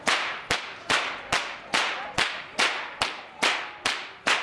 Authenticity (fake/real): real